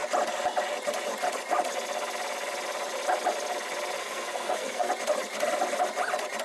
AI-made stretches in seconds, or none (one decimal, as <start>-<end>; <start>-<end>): 4.0-4.9